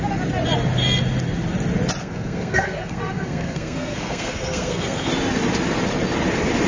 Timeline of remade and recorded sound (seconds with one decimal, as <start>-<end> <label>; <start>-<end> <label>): 0.0-2.0 recorded; 2.0-5.1 remade; 5.1-6.7 recorded